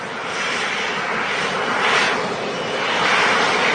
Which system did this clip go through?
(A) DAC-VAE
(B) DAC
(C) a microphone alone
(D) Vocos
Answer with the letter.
C